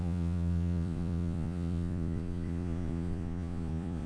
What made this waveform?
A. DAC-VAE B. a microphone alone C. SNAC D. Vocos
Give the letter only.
D